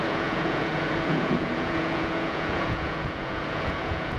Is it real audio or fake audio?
fake